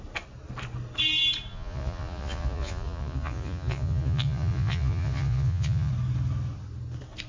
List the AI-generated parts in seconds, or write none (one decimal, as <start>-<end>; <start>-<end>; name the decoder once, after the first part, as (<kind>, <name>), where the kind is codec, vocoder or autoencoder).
1.5-5.9 (vocoder, Vocos)